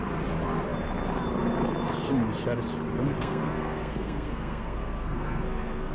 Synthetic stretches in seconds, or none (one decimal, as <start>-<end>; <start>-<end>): 3.1-5.9